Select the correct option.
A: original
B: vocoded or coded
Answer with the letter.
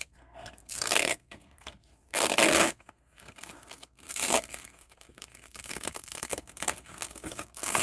B